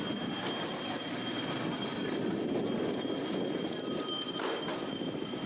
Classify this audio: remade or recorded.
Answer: recorded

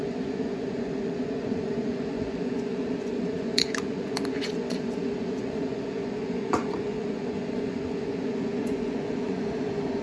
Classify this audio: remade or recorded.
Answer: remade